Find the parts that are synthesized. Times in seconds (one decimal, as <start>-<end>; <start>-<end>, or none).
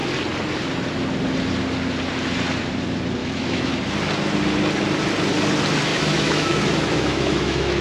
3.2-3.7; 5.9-7.8